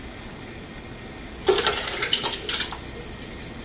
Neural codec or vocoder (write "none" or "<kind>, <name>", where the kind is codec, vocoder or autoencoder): none